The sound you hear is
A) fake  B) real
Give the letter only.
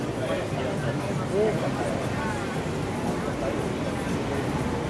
B